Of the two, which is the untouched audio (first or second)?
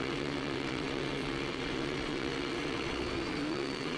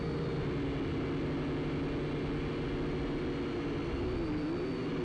second